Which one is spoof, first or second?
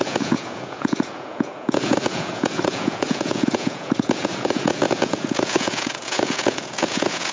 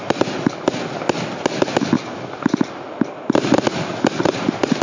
first